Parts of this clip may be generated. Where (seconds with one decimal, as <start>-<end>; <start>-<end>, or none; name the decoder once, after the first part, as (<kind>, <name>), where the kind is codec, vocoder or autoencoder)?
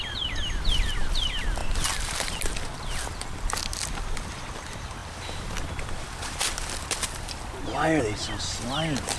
none